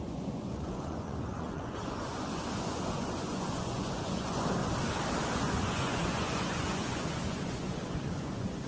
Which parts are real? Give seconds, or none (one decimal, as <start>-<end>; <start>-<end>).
4.6-5.3